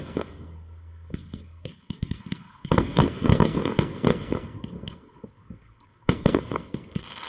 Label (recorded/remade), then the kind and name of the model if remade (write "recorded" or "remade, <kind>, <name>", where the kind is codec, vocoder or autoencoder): remade, codec, SNAC